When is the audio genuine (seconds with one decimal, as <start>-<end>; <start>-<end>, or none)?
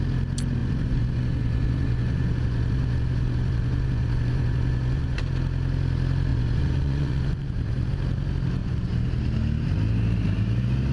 0.0-0.6; 5.2-6.3; 7.9-8.6; 9.1-10.9